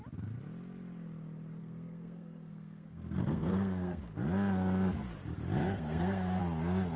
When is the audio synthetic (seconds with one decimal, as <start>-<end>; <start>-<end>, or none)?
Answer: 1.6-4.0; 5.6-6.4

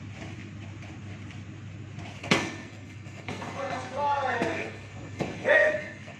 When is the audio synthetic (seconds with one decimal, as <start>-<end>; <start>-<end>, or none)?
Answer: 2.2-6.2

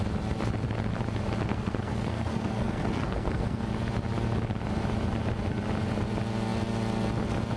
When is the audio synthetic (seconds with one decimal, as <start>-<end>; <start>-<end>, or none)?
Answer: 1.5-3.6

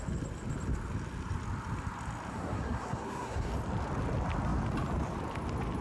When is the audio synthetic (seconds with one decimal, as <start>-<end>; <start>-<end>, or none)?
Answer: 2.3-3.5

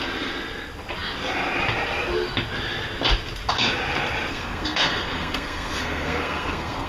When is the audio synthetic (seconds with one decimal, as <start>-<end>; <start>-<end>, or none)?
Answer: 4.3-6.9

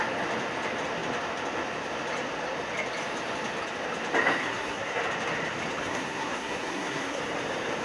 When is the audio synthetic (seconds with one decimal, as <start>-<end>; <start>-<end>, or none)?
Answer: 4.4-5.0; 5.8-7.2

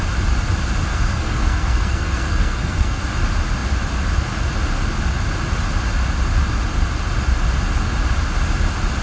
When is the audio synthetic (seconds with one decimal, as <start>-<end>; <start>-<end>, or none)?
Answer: 0.9-3.0